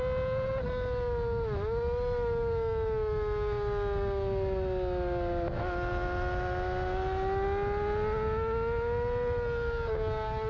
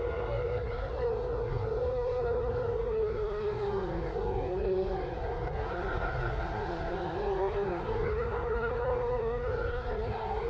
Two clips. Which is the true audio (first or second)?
first